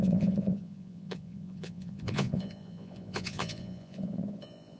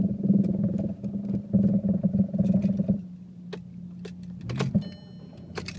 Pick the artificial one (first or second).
first